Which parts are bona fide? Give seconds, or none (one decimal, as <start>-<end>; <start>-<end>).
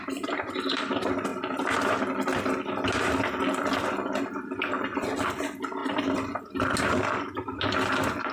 0.0-8.3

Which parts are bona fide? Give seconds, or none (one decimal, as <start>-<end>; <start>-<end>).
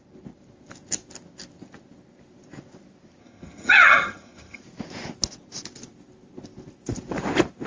0.0-3.2; 4.6-7.7